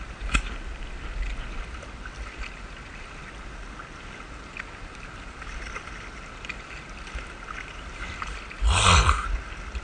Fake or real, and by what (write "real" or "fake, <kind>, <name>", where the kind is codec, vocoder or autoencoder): real